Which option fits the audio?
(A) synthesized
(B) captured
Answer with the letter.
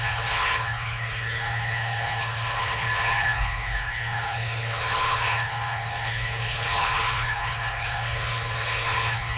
A